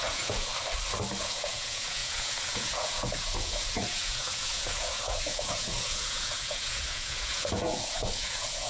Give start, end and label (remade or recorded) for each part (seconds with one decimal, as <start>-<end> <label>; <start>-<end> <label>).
0.0-0.5 remade; 0.5-1.2 recorded; 1.2-8.7 remade